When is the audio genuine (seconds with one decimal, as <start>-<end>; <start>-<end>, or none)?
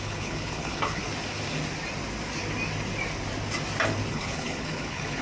1.0-4.1